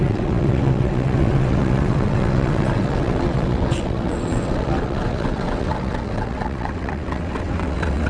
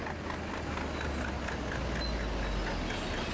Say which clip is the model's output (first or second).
first